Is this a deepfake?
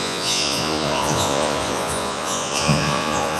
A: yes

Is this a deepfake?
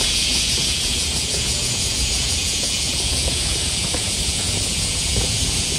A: yes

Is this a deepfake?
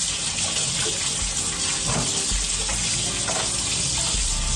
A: no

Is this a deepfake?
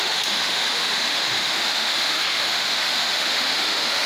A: yes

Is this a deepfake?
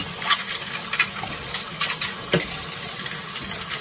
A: no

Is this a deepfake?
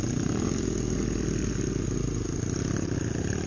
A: no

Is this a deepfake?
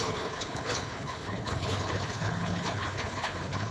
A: yes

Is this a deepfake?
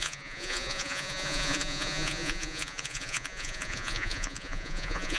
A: yes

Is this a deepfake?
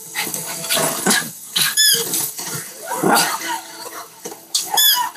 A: yes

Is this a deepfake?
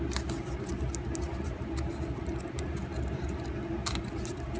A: no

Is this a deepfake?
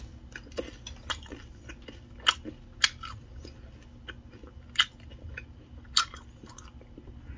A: no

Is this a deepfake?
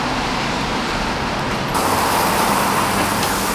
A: no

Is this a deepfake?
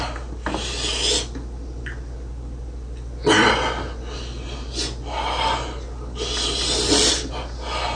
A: no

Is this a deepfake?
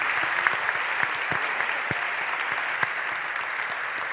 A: no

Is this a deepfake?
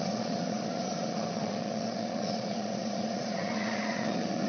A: yes